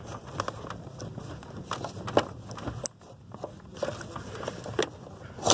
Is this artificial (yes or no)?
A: no